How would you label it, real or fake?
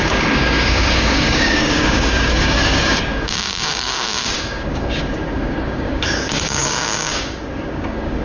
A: fake